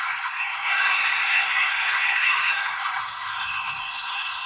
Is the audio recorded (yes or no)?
no